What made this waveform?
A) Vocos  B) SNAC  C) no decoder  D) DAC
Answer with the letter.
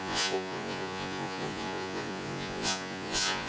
A